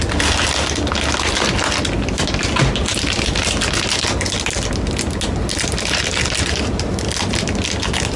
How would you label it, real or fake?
real